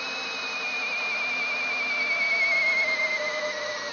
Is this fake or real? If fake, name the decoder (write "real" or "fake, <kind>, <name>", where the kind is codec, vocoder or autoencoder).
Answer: real